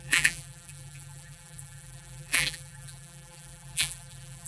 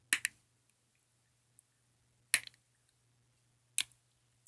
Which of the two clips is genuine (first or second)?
second